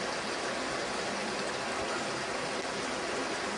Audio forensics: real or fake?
real